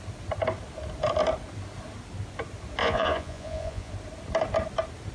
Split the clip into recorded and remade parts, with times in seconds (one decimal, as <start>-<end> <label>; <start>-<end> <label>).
0.0-2.8 recorded; 2.8-3.9 remade; 3.9-5.1 recorded